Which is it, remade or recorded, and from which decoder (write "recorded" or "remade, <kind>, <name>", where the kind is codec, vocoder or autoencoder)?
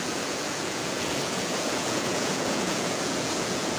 remade, vocoder, Vocos